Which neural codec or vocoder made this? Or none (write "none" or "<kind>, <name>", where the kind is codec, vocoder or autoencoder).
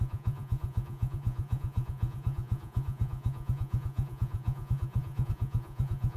vocoder, Vocos